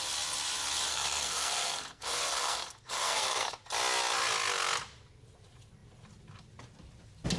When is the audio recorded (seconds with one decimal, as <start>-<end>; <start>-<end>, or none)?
0.0-0.9; 3.6-7.4